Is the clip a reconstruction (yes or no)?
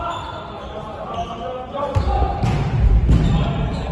no